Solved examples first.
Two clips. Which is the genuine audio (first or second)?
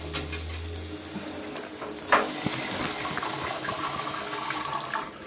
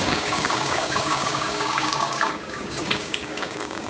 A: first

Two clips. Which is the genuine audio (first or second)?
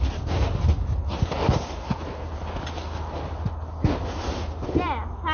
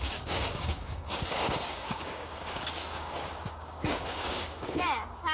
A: first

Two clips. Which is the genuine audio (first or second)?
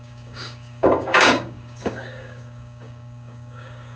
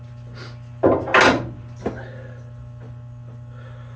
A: second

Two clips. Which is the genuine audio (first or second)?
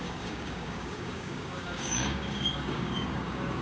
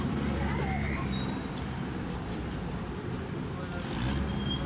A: second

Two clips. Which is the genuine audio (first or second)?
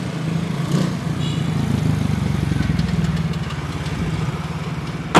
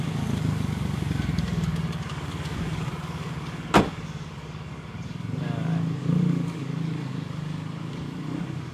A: first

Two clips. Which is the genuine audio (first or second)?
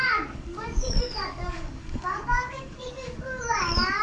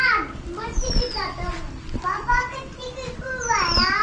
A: second